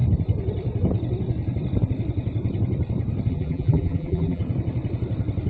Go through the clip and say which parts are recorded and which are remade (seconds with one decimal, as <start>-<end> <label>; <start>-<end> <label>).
0.0-3.3 recorded; 3.3-4.4 remade; 4.4-5.5 recorded